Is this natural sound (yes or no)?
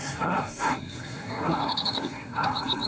no